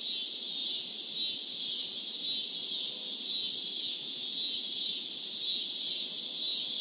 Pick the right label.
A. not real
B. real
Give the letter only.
B